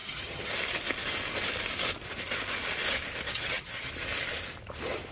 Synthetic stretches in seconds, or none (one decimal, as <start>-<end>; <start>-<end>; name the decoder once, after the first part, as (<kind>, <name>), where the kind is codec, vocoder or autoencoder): 0.0-0.5 (vocoder, HiFi-GAN); 3.3-3.9